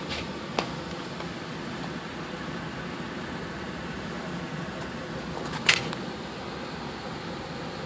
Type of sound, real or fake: real